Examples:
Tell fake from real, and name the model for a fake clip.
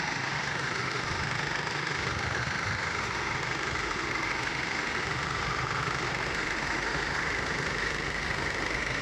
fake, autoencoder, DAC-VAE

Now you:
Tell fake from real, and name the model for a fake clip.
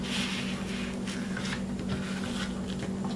real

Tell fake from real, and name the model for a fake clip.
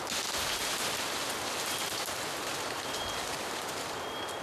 real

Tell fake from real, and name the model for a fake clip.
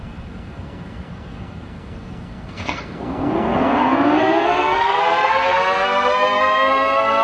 fake, codec, SNAC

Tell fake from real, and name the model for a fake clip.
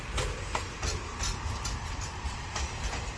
real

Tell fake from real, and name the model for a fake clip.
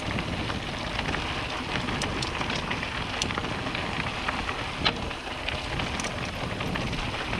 real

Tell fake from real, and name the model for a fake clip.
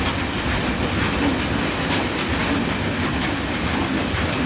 real